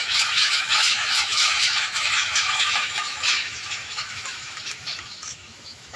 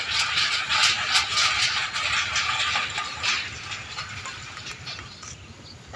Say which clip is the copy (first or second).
first